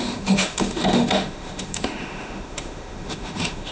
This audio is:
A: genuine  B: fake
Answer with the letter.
B